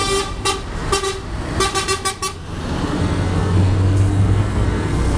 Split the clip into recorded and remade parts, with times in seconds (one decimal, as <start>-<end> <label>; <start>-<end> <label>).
0.0-3.0 recorded; 3.0-5.2 remade